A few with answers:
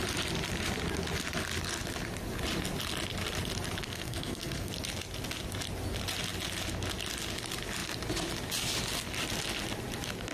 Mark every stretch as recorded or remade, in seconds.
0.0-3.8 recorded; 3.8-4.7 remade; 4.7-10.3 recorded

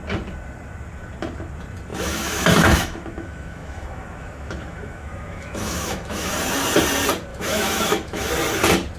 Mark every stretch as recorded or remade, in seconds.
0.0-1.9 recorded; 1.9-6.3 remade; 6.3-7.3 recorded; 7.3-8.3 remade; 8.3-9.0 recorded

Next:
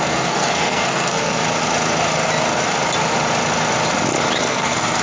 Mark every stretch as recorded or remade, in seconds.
0.0-1.4 remade; 1.4-4.4 recorded; 4.4-5.0 remade

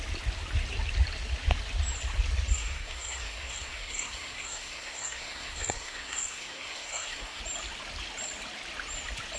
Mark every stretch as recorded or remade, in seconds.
0.0-2.5 recorded; 2.5-7.4 remade; 7.4-9.4 recorded

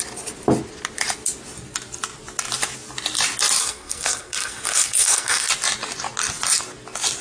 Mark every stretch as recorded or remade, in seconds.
0.0-3.6 recorded; 3.6-5.5 remade; 5.5-7.2 recorded

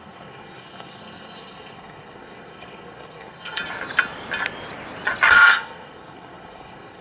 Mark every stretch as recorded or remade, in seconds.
0.0-3.6 remade; 3.6-5.3 recorded; 5.3-7.0 remade

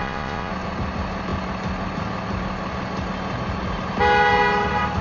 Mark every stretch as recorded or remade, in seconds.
0.0-0.5 remade; 0.5-5.0 recorded

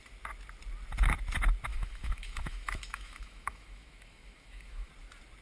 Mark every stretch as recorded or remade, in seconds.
0.0-1.7 recorded; 1.7-4.9 remade; 4.9-5.4 recorded